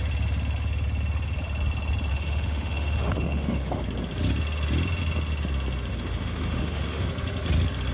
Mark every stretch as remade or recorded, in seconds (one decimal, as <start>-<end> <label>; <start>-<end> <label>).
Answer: 0.0-2.1 recorded; 2.1-3.8 remade; 3.8-5.9 recorded; 5.9-7.1 remade; 7.1-7.9 recorded